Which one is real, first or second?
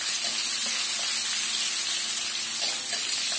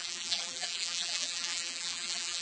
first